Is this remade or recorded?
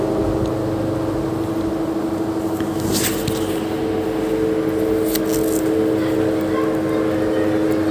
recorded